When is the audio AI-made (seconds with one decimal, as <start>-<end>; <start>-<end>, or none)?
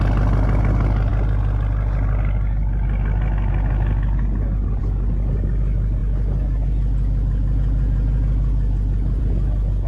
none